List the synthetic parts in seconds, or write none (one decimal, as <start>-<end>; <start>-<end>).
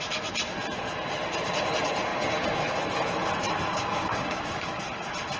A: 3.7-4.8